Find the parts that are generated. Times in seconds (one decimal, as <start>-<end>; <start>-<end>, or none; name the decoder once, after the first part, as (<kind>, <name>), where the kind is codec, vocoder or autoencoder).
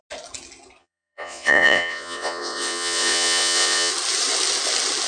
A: 0.8-3.9 (vocoder, Vocos)